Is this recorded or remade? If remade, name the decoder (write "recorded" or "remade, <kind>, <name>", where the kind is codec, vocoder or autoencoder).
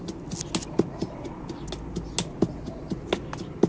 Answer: recorded